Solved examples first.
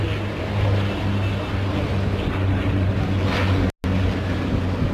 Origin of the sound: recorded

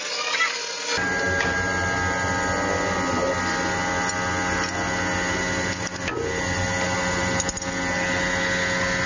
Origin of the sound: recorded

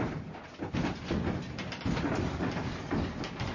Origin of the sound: recorded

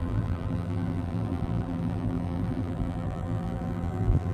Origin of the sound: remade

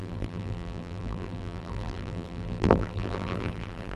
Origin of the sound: remade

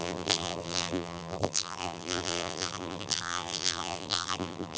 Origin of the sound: remade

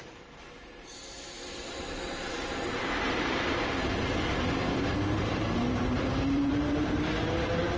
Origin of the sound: remade